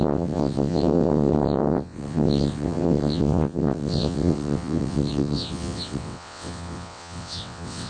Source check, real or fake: fake